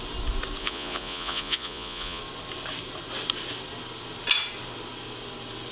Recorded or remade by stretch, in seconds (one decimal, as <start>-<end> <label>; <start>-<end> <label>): 0.0-0.6 recorded; 0.6-2.2 remade; 2.2-5.7 recorded